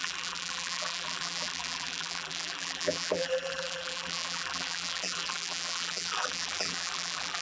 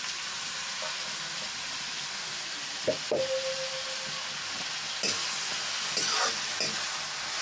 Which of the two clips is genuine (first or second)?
second